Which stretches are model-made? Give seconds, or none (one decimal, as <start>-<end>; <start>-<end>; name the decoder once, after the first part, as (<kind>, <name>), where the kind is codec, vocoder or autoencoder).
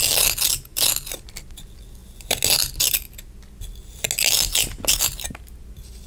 none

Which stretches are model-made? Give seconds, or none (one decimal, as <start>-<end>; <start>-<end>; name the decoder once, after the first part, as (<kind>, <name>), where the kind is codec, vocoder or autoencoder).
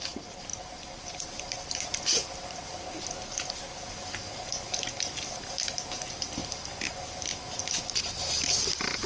0.5-3.1 (vocoder, BigVGAN v2)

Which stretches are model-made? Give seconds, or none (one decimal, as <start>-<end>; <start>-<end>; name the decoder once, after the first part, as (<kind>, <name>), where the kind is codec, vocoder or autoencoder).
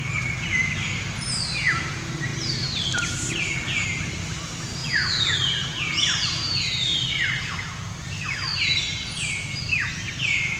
4.8-6.6 (vocoder, Vocos)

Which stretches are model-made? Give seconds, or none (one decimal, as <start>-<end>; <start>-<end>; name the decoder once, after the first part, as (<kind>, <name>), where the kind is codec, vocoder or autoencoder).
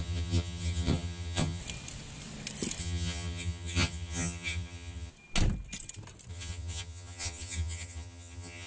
0.0-1.6 (vocoder, HiFi-GAN); 2.8-5.1; 6.3-8.7